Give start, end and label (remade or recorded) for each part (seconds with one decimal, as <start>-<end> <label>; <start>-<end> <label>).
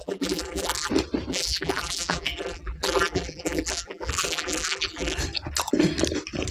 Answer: 0.0-0.9 remade; 0.9-1.3 recorded; 1.3-5.2 remade; 5.2-6.5 recorded